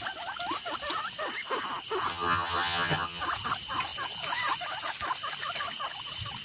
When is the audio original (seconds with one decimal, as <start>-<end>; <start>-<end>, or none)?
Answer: 0.0-2.1; 3.2-6.4